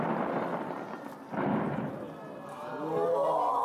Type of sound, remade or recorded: recorded